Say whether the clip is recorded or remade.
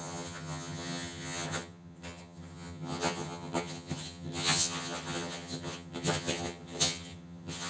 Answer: remade